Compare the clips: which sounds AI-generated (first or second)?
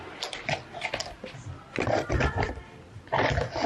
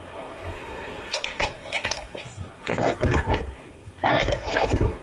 second